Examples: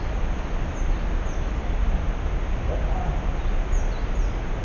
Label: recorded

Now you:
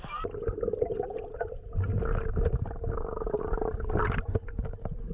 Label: recorded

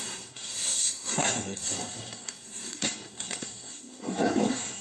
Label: remade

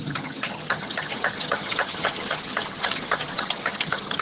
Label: remade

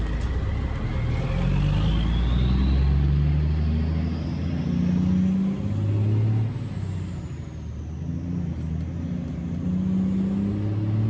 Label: recorded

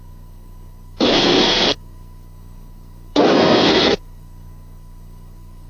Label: remade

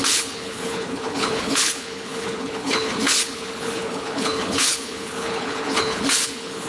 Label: remade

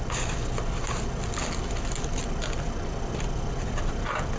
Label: recorded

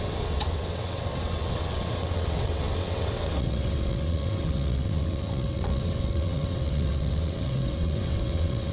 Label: remade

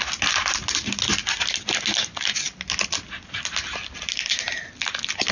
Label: recorded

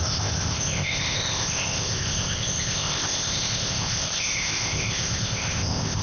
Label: remade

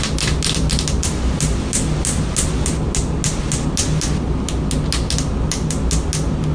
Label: recorded